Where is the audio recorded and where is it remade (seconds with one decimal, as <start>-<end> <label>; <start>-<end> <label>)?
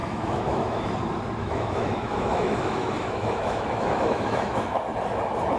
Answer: 0.0-0.9 remade; 0.9-1.4 recorded; 1.4-4.8 remade; 4.8-5.6 recorded